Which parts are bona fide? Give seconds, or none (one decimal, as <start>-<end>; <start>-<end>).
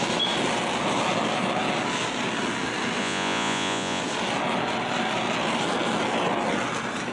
0.0-3.0; 4.0-7.1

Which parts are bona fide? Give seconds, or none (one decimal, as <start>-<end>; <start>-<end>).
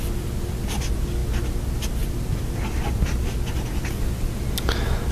0.0-5.1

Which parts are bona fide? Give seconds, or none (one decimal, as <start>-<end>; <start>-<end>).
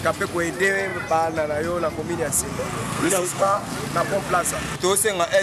0.0-2.8; 3.7-5.4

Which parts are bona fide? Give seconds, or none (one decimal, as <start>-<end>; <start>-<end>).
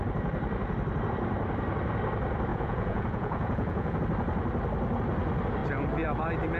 0.0-2.5; 4.0-6.6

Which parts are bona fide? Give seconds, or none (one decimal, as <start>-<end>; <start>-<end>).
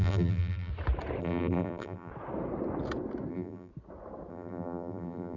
0.7-1.2; 2.1-3.3; 3.7-4.3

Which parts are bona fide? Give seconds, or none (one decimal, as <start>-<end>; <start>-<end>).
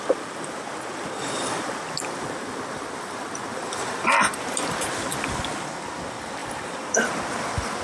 0.0-3.5; 4.9-6.4; 7.2-7.8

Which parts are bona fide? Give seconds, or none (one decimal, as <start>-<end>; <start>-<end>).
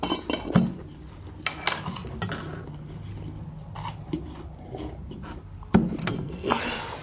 0.0-6.0; 6.6-7.0